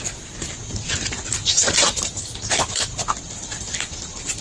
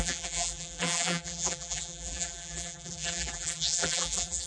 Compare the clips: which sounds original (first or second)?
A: first